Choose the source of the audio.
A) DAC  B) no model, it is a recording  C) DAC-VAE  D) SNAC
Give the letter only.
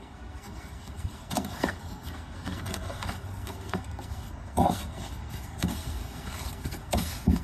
D